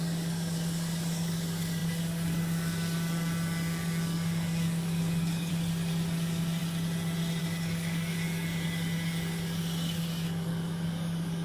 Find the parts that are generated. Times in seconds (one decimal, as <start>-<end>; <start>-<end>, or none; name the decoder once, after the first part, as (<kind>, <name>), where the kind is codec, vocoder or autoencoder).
0.0-6.6 (codec, DAC); 7.4-11.4